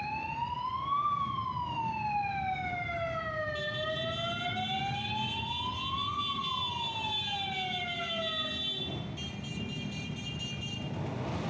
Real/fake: real